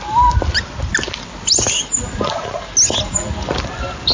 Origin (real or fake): real